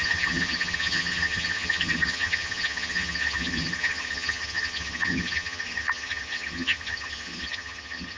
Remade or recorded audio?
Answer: remade